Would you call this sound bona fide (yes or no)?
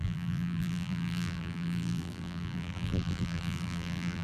no